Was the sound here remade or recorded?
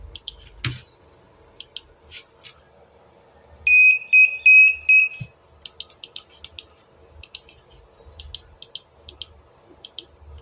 recorded